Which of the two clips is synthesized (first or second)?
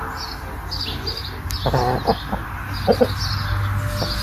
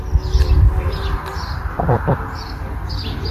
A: second